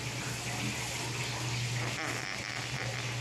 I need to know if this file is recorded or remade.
recorded